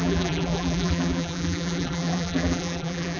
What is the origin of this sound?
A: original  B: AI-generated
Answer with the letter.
B